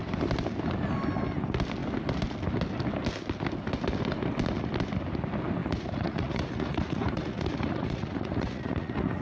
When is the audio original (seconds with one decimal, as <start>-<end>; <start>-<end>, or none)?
0.0-5.6